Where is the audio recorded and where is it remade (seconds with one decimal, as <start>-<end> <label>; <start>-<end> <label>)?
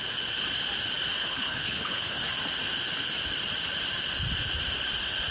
0.0-1.2 recorded; 1.2-2.3 remade; 2.3-5.3 recorded